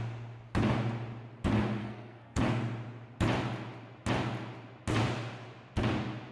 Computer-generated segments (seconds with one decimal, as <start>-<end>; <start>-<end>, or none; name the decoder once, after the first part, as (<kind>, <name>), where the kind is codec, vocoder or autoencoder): 1.8-2.4 (codec, SNAC)